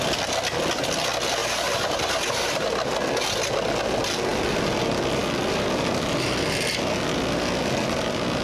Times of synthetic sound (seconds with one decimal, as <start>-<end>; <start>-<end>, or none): 1.4-2.9